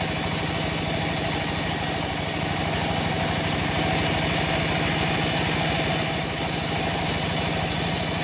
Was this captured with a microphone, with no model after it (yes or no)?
yes